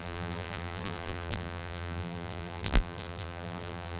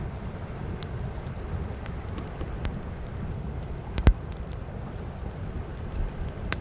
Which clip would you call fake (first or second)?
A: first